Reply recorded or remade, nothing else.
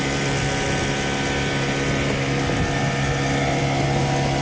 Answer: recorded